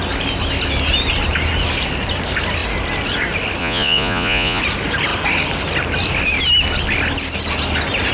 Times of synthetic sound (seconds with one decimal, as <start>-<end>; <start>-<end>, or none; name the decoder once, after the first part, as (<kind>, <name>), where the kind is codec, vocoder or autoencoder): 3.6-4.6 (vocoder, Vocos)